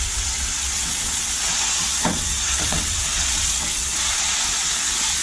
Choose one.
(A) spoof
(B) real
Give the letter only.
A